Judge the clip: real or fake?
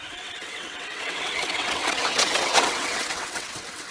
fake